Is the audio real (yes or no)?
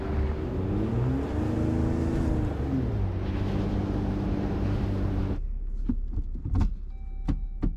yes